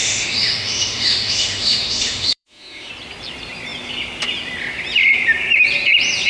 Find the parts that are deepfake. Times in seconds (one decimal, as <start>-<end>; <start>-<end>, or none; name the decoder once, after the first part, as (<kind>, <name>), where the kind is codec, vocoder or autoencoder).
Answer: 0.0-2.9 (autoencoder, DAC-VAE)